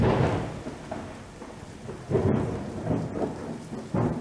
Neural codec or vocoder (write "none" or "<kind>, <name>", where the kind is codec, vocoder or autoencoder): none